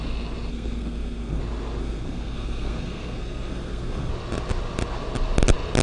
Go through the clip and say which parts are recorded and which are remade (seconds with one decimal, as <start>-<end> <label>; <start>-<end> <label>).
0.0-0.5 recorded; 0.5-1.4 remade; 1.4-1.8 recorded; 1.8-4.1 remade; 4.1-5.8 recorded